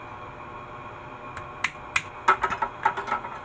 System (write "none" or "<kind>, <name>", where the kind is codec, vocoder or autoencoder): none